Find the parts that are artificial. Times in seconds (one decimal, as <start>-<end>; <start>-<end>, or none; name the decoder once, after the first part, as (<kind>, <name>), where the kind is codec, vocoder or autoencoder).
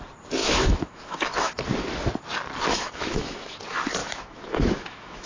0.4-1.5 (autoencoder, DAC-VAE); 2.7-3.6; 4.0-5.3